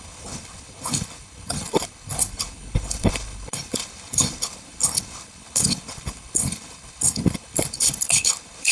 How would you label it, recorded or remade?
remade